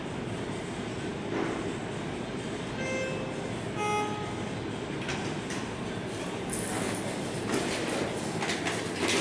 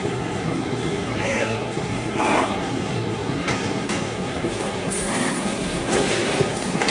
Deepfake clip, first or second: second